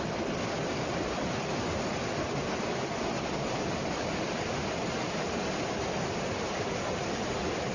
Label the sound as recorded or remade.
recorded